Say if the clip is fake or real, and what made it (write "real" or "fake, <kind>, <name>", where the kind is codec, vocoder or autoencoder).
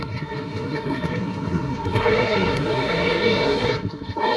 fake, codec, SNAC